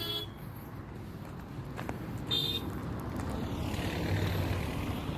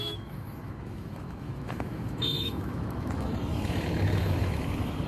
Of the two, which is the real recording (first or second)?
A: first